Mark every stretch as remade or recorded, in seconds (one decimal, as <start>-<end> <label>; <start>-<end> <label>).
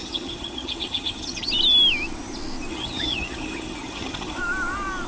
0.0-1.5 remade; 1.5-2.7 recorded; 2.7-4.4 remade; 4.4-5.1 recorded